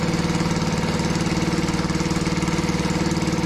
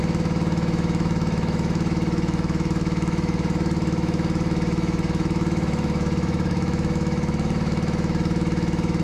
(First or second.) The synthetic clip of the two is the second